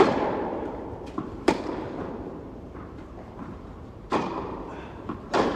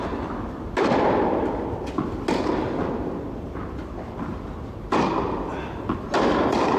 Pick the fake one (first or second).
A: first